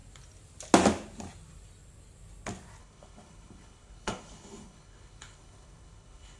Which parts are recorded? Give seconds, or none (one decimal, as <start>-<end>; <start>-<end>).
0.0-2.8